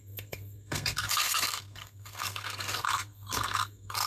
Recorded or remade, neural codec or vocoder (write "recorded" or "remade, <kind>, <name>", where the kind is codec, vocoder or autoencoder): remade, codec, SNAC